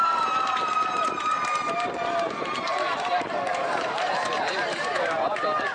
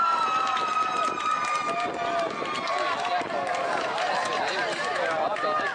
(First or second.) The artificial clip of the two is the first